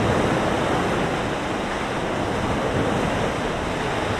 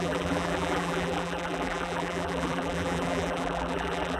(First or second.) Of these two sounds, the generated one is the second